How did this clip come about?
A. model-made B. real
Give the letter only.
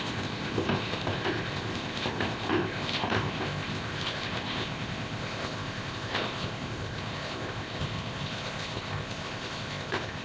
A